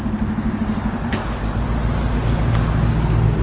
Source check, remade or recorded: recorded